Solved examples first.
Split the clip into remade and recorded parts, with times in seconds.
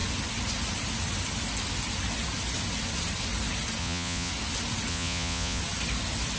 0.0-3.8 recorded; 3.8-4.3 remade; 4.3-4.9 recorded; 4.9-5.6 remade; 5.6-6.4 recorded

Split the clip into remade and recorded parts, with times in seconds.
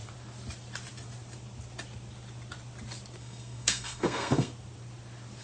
0.0-3.2 recorded; 3.2-4.5 remade; 4.5-5.4 recorded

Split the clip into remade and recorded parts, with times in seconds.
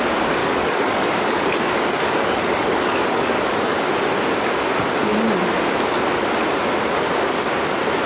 0.0-0.4 recorded; 0.4-3.9 remade; 3.9-8.1 recorded